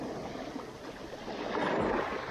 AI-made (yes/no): no